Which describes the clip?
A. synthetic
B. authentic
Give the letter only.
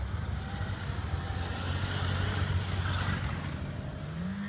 B